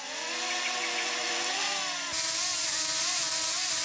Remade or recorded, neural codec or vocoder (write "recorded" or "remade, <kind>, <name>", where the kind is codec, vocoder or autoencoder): recorded